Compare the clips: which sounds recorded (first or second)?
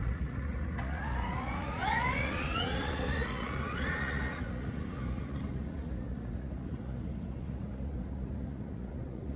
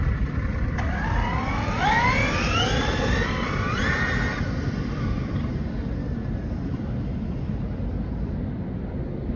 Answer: second